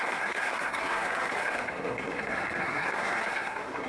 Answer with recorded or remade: remade